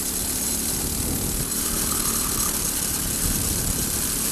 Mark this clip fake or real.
real